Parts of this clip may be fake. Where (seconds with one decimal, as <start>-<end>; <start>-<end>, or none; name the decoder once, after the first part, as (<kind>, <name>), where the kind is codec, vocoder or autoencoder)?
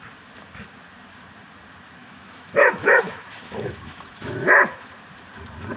2.0-4.9 (autoencoder, DAC-VAE)